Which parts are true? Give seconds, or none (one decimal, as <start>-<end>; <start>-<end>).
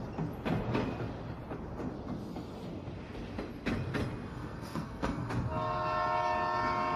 0.0-4.3; 5.3-7.0